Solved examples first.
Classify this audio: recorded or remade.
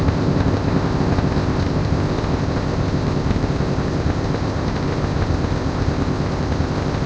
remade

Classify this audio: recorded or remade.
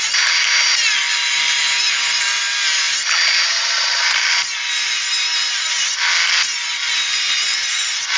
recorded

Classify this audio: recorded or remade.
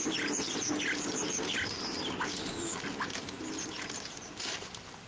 recorded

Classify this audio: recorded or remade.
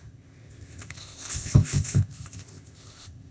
remade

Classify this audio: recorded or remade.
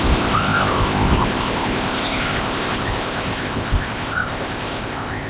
remade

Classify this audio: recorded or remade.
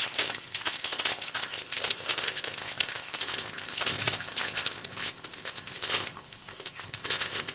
remade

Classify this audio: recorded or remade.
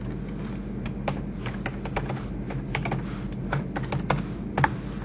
recorded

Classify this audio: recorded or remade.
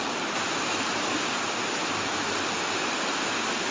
recorded